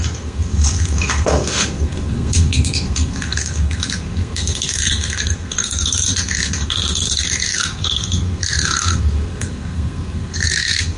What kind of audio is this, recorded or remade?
remade